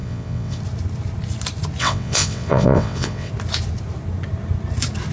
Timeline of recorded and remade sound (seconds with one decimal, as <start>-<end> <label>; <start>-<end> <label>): 0.0-0.6 remade; 0.6-1.8 recorded; 1.8-3.3 remade; 3.3-5.1 recorded